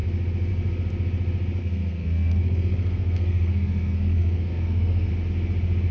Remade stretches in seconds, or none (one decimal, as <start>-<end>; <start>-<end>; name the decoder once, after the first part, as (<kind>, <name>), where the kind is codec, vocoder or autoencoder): 1.6-5.1 (codec, SNAC)